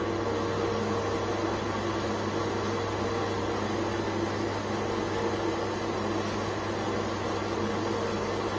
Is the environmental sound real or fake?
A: real